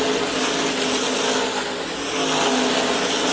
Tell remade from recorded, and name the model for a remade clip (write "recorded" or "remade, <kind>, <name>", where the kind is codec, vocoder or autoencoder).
recorded